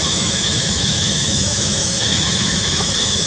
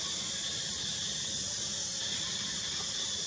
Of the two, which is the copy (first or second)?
first